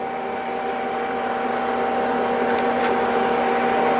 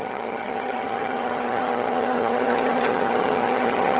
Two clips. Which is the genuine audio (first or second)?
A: first